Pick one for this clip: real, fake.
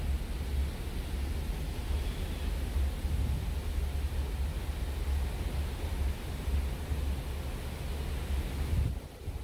real